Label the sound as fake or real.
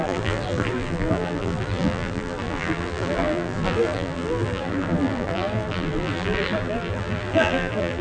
fake